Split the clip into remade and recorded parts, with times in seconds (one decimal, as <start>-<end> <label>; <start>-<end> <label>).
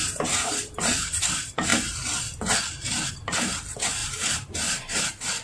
0.0-0.5 remade; 0.5-4.0 recorded; 4.0-5.0 remade; 5.0-5.4 recorded